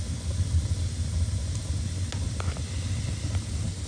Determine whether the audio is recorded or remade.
recorded